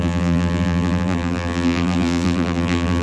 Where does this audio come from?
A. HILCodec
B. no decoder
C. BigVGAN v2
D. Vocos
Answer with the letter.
C